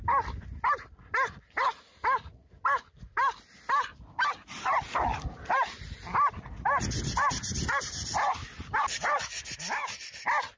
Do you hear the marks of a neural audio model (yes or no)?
no